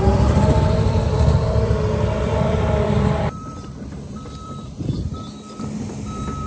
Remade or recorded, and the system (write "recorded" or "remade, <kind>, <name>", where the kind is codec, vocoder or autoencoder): remade, vocoder, BigVGAN v2